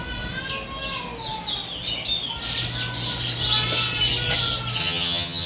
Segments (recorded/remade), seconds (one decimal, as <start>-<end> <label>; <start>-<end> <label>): 0.0-4.8 recorded; 4.8-5.5 remade